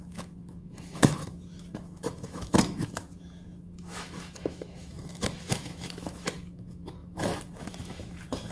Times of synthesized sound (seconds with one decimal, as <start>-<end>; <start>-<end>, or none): 0.0-8.5